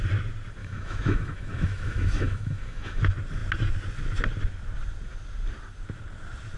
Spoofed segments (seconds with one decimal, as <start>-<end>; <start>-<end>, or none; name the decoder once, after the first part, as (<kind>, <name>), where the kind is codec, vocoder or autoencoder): 0.6-3.0 (autoencoder, DAC-VAE)

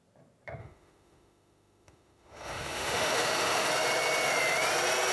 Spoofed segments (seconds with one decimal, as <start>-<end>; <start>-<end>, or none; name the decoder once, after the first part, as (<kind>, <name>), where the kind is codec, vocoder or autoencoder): 0.6-3.7 (autoencoder, DAC-VAE)

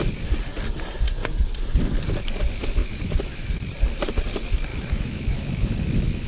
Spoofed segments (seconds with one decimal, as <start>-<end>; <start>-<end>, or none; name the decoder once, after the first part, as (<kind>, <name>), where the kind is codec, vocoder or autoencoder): 2.8-3.5 (autoencoder, DAC-VAE); 4.7-6.3

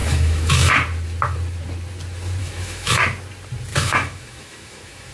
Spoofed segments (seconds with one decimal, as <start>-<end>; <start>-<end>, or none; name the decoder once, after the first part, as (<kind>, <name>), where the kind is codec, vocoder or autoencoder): 0.0-0.7 (autoencoder, DAC-VAE); 2.4-3.0; 3.7-5.1

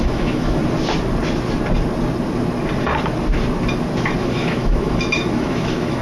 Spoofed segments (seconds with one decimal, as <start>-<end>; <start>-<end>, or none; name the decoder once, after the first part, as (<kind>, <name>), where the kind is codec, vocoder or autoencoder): 0.0-0.6 (autoencoder, DAC-VAE); 4.2-6.0

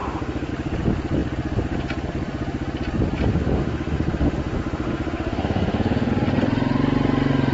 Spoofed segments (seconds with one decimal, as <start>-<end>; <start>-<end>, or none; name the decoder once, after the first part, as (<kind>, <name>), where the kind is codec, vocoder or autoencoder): 0.0-0.5 (autoencoder, DAC-VAE); 3.3-6.1

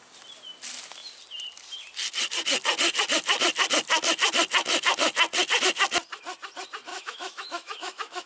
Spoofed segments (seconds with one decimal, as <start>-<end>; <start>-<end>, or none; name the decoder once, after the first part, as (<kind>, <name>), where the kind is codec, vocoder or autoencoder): 6.9-8.3 (autoencoder, DAC-VAE)